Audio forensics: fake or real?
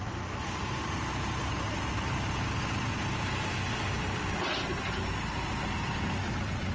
real